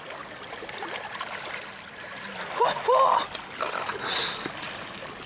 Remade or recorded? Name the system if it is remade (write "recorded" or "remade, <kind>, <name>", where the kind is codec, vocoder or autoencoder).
recorded